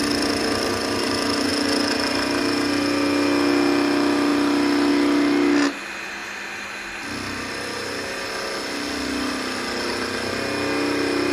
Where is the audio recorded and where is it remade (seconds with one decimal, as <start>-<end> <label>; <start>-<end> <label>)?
0.0-11.3 recorded